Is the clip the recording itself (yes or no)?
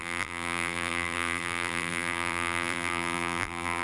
no